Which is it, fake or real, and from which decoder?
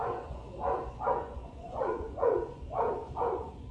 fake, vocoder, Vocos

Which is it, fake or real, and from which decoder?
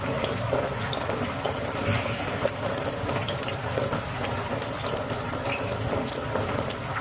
real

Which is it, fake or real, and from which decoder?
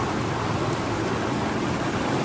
real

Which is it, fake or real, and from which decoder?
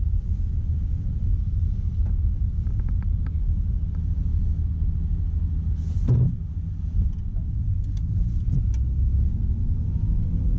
real